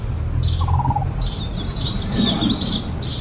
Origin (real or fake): real